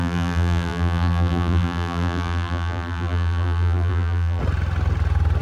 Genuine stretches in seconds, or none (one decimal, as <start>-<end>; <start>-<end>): 4.4-5.4